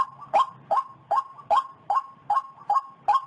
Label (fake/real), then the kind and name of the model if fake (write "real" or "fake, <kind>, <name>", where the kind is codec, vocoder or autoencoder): real